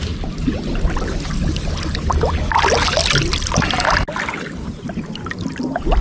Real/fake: real